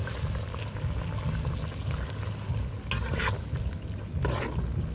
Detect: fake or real real